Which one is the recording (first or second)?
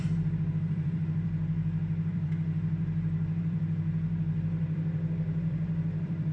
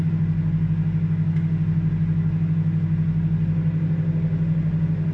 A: second